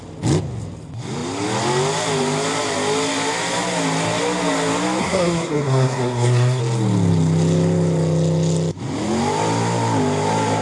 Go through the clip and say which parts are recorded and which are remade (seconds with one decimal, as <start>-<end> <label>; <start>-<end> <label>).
0.0-5.0 recorded; 5.0-6.6 remade; 6.6-10.6 recorded